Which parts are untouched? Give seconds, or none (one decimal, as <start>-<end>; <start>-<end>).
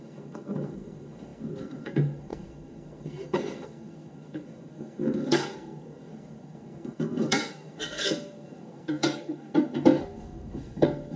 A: none